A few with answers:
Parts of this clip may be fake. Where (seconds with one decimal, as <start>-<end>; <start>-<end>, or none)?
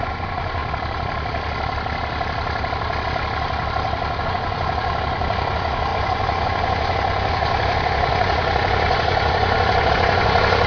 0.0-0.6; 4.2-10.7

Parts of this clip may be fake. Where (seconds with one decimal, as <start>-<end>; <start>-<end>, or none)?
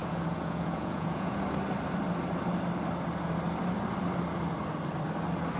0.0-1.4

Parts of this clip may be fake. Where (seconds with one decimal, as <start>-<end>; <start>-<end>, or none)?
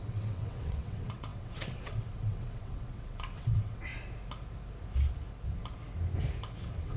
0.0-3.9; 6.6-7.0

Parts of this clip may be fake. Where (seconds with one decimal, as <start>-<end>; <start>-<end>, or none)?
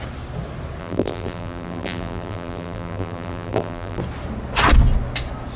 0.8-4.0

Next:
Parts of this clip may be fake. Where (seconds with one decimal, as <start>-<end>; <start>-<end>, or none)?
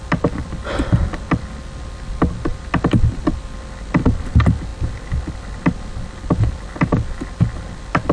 none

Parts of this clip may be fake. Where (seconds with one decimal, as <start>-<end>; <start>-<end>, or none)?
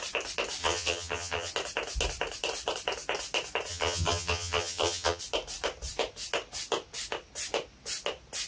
0.6-1.5; 3.7-5.2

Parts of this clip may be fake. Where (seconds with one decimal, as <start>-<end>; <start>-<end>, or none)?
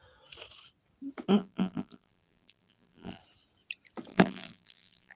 1.4-3.2; 4.1-5.2